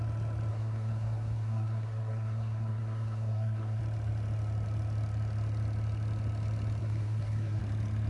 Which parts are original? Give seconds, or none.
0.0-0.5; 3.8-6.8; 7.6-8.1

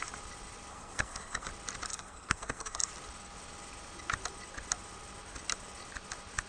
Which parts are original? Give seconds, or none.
0.0-0.7; 1.5-1.9; 2.9-6.5